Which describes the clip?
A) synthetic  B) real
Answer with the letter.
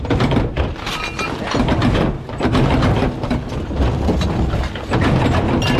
B